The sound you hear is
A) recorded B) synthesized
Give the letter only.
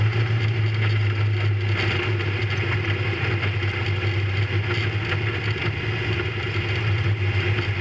A